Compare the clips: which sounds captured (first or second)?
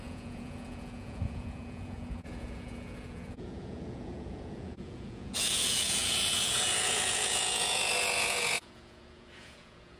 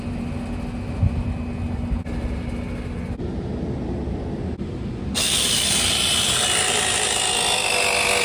second